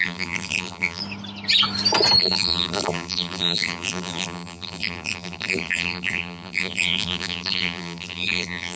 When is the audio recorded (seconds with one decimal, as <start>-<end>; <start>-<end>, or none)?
1.0-2.2

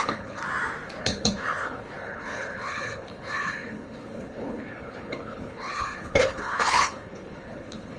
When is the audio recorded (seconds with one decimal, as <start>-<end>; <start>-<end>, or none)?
0.4-1.0